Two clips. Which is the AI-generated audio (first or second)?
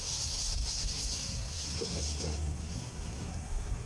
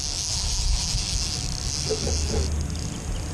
first